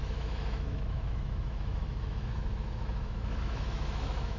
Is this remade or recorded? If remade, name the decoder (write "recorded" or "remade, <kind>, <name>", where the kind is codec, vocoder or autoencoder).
remade, autoencoder, DAC-VAE